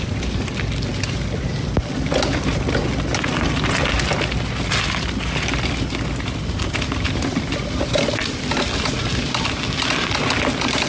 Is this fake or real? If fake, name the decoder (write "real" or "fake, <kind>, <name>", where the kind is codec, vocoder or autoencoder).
real